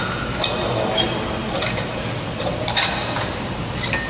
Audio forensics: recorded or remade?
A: recorded